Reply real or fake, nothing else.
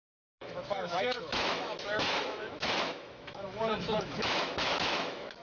fake